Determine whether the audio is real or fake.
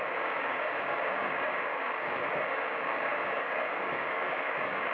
fake